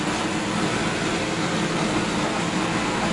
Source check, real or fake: real